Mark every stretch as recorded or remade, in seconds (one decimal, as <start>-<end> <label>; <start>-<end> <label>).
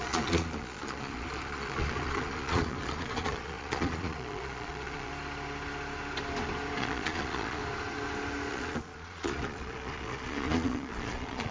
0.0-5.1 remade; 5.1-6.8 recorded; 6.8-7.6 remade; 7.6-8.5 recorded; 8.5-11.5 remade